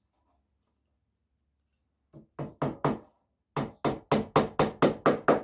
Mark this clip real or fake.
real